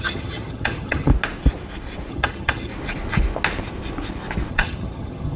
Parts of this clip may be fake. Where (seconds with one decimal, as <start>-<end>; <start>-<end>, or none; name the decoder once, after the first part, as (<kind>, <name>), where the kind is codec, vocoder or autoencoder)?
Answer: 0.0-1.1 (vocoder, HiFi-GAN); 2.1-2.7; 4.5-5.4